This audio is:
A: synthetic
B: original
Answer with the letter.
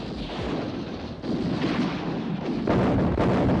B